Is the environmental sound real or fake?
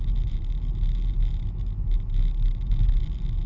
real